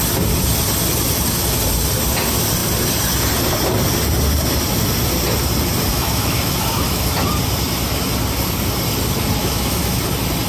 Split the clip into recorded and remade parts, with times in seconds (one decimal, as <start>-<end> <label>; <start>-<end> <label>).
0.0-5.9 recorded; 5.9-7.1 remade; 7.1-9.4 recorded; 9.4-10.0 remade; 10.0-10.5 recorded